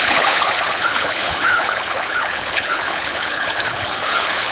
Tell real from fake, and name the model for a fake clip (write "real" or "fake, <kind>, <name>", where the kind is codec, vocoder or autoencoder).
fake, codec, HILCodec